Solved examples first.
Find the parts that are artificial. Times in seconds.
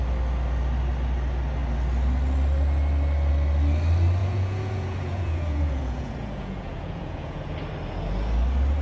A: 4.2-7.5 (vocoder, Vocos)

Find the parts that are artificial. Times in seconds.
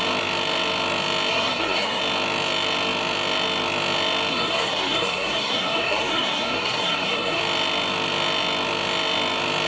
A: 1.3-2.0 (codec, SNAC); 4.3-7.4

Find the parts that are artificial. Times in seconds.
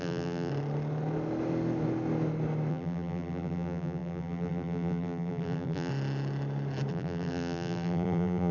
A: 0.0-0.5 (vocoder, BigVGAN v2); 2.7-5.9; 6.9-8.5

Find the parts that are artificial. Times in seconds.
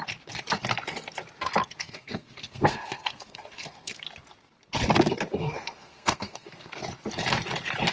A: 1.8-4.0 (codec, SNAC); 5.4-6.8